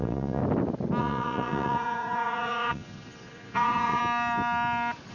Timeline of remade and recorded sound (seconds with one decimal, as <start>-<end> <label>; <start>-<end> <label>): 0.0-0.4 remade; 0.4-1.0 recorded; 1.0-4.0 remade; 4.0-5.1 recorded